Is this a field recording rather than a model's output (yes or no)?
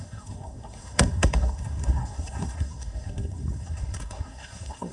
no